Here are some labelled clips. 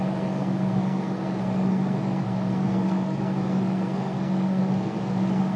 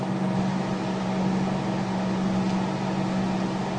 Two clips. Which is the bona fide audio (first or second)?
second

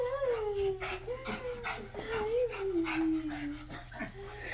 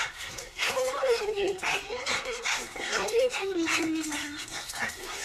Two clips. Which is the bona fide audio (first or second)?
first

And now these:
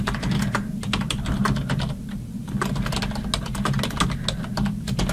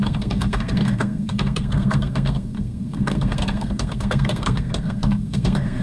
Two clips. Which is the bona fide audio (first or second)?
first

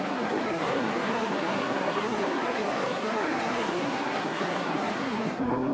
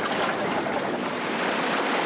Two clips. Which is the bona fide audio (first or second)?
second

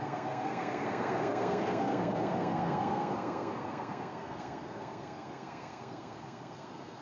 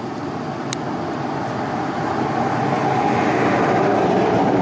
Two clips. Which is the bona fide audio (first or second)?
second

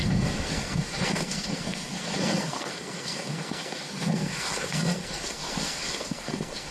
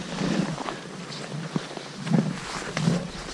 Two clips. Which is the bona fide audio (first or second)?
second